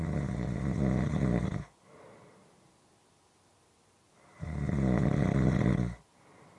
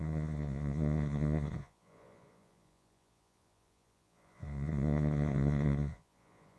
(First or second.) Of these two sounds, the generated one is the second